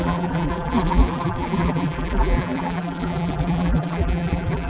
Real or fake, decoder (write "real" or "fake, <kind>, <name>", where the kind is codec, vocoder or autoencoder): fake, vocoder, BigVGAN v2